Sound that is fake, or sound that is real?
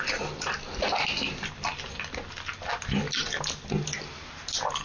real